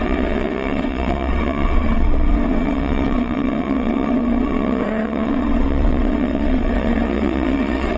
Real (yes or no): no